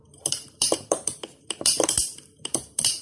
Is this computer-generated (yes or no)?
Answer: yes